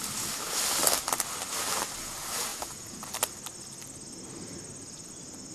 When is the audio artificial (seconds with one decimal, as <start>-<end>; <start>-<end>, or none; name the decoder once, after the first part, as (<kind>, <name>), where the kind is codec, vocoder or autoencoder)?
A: 2.5-3.1 (vocoder, Vocos)